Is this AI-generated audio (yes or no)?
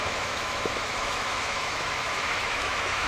yes